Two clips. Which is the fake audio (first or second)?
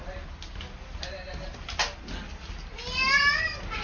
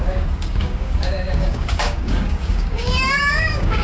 second